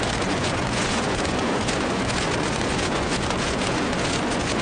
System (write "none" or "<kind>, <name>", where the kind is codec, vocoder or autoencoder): vocoder, Vocos